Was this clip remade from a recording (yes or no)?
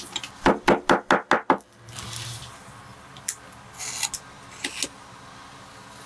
no